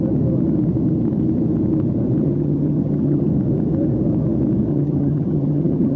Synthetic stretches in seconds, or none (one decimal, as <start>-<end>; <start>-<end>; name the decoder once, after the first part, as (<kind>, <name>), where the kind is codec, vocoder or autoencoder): 2.2-3.3 (vocoder, HiFi-GAN); 4.7-6.0